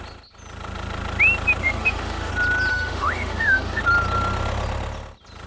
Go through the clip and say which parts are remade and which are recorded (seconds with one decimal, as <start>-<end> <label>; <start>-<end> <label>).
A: 0.0-1.6 recorded; 1.6-2.3 remade; 2.3-2.7 recorded; 2.7-3.8 remade; 3.8-5.5 recorded